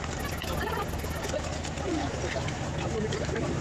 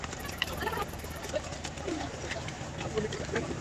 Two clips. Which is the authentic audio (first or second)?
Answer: first